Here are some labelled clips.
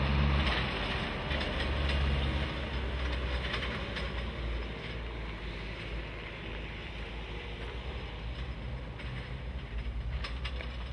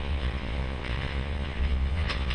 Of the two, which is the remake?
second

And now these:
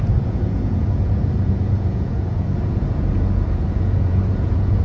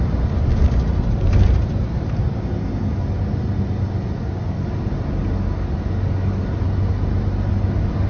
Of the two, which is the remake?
first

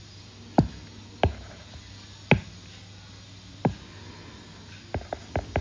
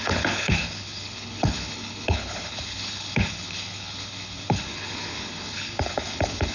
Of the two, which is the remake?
second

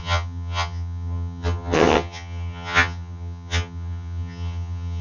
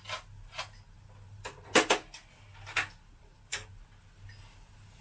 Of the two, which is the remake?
first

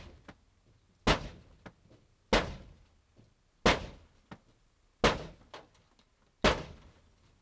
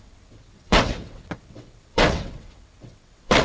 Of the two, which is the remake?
second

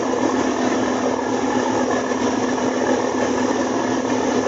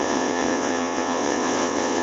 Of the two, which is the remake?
second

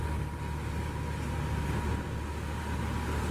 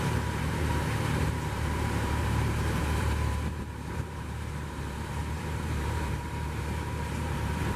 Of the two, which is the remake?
second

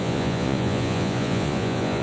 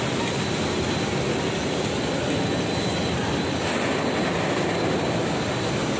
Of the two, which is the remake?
first